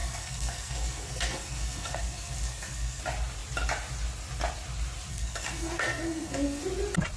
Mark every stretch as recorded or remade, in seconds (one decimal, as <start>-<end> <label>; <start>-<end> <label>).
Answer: 0.0-3.0 remade; 3.0-5.1 recorded; 5.1-6.6 remade; 6.6-7.2 recorded